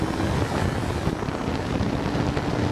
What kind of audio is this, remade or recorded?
recorded